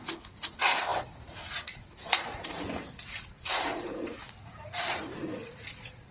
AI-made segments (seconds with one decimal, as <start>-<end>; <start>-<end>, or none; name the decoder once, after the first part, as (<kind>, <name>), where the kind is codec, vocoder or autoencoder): 0.0-6.1 (vocoder, Vocos)